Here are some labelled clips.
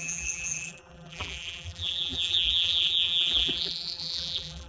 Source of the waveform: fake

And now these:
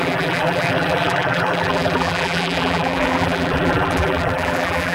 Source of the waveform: fake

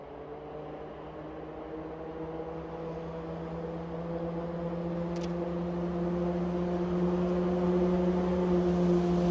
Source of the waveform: real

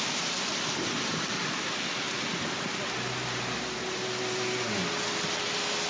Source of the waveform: real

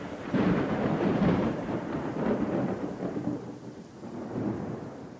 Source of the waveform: fake